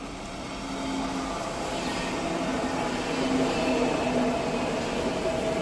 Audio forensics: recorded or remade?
recorded